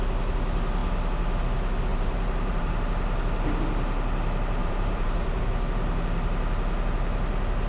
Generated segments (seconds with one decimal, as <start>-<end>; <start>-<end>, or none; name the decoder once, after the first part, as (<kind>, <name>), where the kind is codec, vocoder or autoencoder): 1.9-2.7 (vocoder, BigVGAN v2); 4.6-5.4